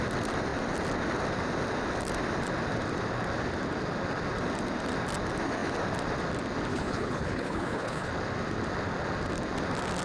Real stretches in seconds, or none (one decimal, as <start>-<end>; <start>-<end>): 0.0-6.7; 8.1-10.0